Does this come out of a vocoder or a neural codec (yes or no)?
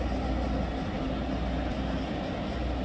no